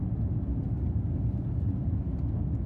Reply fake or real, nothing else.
real